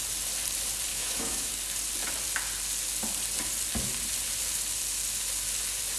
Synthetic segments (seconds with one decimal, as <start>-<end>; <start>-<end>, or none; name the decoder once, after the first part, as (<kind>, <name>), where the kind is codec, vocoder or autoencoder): 0.9-1.5 (autoencoder, DAC-VAE)